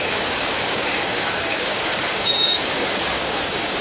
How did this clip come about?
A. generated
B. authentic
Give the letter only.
A